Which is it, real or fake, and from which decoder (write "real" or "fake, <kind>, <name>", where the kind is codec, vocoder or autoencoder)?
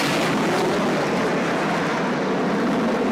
real